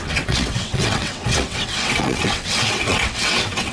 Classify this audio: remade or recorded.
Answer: remade